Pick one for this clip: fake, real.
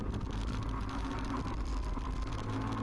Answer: fake